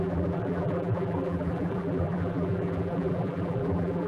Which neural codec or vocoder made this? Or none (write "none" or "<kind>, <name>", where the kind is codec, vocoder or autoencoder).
vocoder, BigVGAN v2